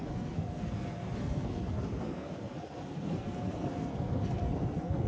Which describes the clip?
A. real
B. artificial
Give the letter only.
B